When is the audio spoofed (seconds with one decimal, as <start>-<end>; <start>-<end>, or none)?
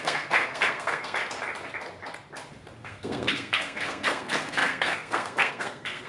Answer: 0.0-1.2; 2.8-6.1